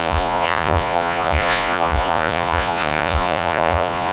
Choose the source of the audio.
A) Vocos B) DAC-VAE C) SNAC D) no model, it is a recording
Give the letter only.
A